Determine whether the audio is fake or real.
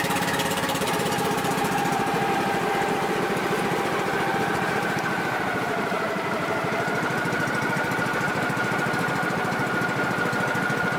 fake